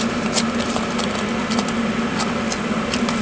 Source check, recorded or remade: recorded